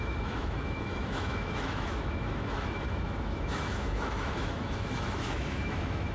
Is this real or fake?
fake